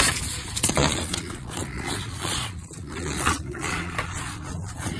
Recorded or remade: remade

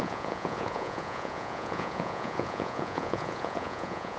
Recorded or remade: remade